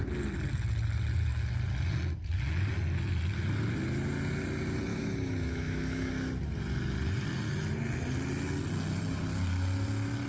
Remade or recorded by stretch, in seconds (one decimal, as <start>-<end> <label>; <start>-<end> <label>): 0.0-4.9 recorded; 4.9-6.1 remade; 6.1-10.3 recorded